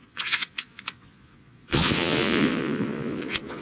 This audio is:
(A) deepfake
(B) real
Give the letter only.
A